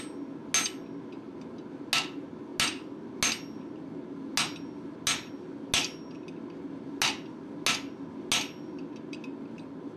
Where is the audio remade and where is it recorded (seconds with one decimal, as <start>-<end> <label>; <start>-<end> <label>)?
0.0-10.0 recorded

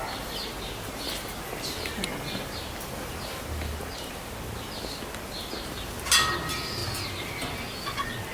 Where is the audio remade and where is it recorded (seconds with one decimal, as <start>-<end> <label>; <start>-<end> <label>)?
0.0-8.3 recorded

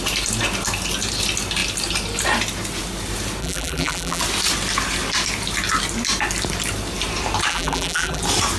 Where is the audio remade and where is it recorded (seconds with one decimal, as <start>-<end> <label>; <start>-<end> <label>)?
0.0-3.4 recorded; 3.4-4.2 remade; 4.2-7.5 recorded; 7.5-8.2 remade; 8.2-8.6 recorded

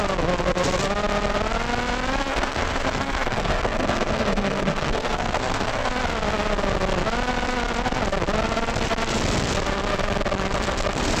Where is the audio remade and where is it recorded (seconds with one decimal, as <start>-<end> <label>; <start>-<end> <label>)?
0.0-2.3 recorded; 2.3-5.9 remade; 5.9-11.2 recorded

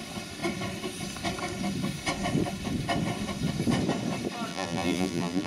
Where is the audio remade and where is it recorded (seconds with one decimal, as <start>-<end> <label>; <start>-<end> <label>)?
0.0-4.5 recorded; 4.5-5.5 remade